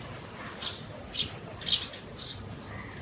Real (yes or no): yes